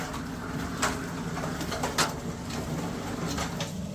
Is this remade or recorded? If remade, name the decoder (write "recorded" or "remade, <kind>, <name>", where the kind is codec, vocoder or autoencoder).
recorded